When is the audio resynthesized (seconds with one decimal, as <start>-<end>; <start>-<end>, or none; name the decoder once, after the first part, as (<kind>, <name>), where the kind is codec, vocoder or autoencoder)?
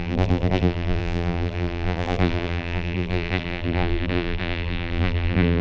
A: 0.0-5.6 (vocoder, BigVGAN v2)